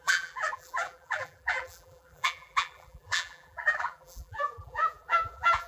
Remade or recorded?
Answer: remade